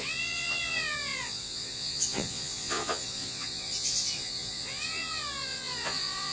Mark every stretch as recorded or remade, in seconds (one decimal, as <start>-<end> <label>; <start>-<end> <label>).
0.0-6.3 remade